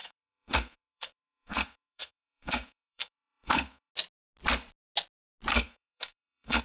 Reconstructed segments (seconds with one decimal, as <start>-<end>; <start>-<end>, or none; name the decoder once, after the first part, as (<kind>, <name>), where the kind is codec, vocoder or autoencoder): 0.0-3.9 (codec, SNAC); 5.5-6.6